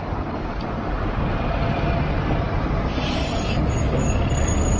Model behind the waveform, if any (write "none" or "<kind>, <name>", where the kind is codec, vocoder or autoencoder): none